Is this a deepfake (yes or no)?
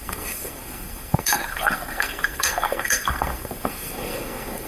yes